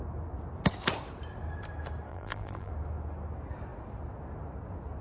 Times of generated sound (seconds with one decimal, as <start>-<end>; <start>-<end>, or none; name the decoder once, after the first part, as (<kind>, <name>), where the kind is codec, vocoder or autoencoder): 2.1-2.7 (vocoder, BigVGAN v2)